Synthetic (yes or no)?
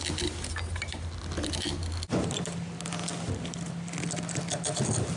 no